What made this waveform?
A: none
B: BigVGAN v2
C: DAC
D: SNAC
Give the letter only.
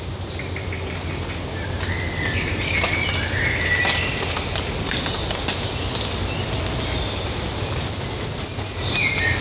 A